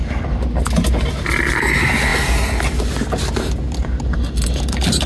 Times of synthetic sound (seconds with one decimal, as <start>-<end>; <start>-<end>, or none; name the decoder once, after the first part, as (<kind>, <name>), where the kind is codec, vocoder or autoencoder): none